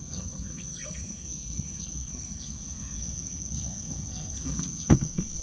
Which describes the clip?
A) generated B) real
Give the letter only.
A